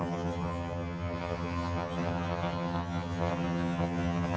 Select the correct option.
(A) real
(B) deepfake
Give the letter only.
B